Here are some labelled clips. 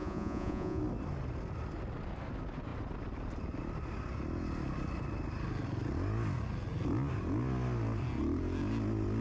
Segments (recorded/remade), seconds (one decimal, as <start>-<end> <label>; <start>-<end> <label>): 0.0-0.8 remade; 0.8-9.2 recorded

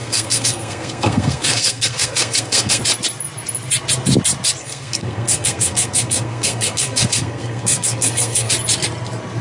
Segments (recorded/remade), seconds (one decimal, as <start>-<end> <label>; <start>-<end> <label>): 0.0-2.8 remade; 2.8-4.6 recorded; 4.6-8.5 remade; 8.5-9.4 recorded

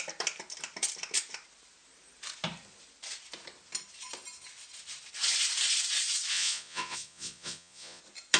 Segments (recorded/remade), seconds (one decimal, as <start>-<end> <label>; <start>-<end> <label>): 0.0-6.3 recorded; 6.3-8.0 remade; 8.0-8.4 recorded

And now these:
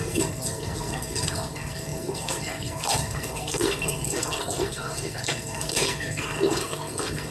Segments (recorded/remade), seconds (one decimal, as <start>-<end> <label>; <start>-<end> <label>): 0.0-7.3 remade